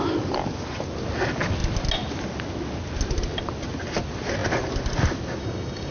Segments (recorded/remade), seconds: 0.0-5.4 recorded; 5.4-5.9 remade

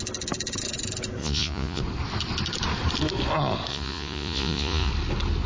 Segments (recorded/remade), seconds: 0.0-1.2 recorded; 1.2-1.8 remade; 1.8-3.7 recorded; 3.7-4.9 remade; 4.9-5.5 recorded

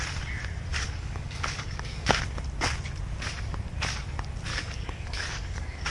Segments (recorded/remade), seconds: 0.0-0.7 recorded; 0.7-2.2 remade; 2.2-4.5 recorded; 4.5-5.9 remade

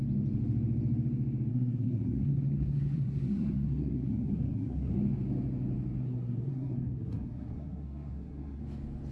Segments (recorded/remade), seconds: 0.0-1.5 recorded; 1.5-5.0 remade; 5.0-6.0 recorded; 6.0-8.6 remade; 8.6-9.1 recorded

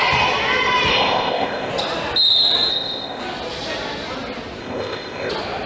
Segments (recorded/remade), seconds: 0.0-0.9 recorded; 0.9-1.7 remade; 1.7-2.7 recorded; 2.7-3.2 remade; 3.2-4.6 recorded; 4.6-5.3 remade; 5.3-5.7 recorded

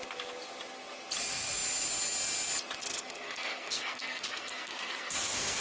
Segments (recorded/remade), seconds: 0.0-2.9 recorded; 2.9-5.6 remade

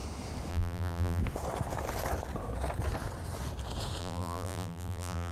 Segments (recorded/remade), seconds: 0.0-0.5 recorded; 0.5-1.2 remade; 1.2-4.0 recorded; 4.0-5.3 remade